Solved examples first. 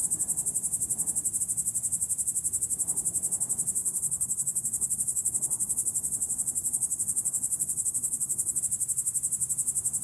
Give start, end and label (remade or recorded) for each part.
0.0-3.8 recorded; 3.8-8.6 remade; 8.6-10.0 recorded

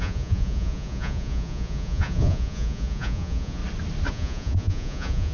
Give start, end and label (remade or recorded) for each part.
0.0-3.6 remade; 3.6-4.1 recorded; 4.1-5.3 remade

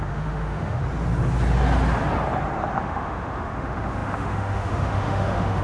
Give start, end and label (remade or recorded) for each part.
0.0-0.8 remade; 0.8-2.8 recorded; 2.8-5.6 remade

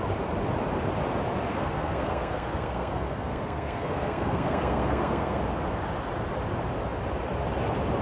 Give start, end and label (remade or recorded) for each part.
0.0-1.5 recorded; 1.5-5.4 remade; 5.4-8.0 recorded

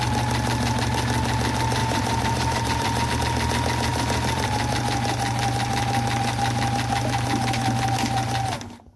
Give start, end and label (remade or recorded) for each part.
0.0-1.8 recorded; 1.8-3.1 remade; 3.1-3.9 recorded; 3.9-4.8 remade; 4.8-9.0 recorded

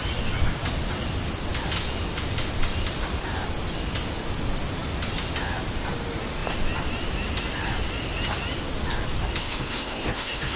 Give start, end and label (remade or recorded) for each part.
0.0-9.4 recorded; 9.4-10.6 remade